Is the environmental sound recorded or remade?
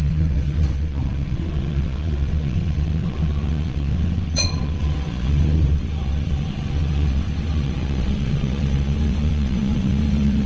remade